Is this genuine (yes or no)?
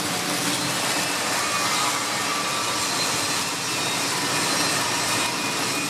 yes